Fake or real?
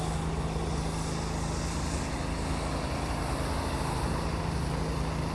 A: real